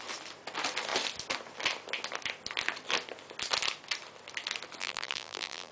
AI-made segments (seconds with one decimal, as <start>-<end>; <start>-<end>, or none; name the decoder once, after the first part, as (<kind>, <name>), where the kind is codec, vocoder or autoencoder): 4.8-5.7 (vocoder, BigVGAN v2)